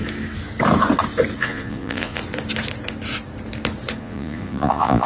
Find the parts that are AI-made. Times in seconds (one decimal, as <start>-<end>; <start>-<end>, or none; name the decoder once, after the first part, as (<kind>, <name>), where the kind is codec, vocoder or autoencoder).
1.4-2.2 (vocoder, Vocos); 4.0-5.1